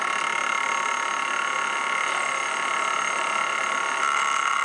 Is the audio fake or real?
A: real